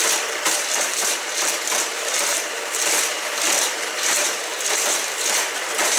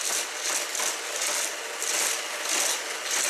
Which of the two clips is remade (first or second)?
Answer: first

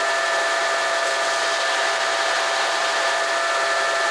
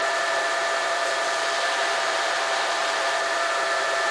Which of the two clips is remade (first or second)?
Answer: second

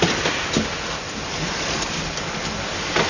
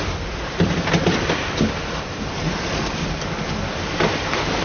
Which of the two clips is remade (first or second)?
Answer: second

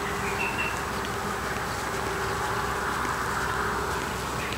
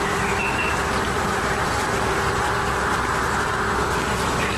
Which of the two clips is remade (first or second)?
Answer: second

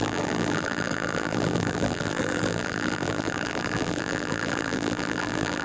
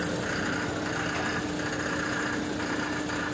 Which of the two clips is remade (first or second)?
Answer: first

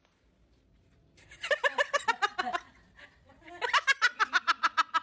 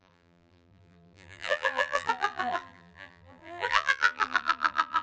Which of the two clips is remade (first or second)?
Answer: second